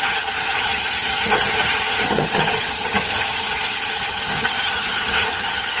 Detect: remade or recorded remade